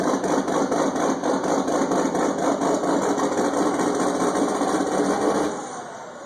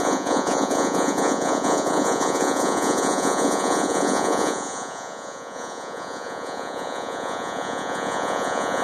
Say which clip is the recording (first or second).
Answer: first